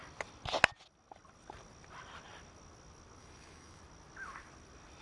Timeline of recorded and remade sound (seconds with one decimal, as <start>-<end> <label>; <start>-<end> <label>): 0.0-3.2 recorded; 3.2-3.8 remade; 3.8-5.0 recorded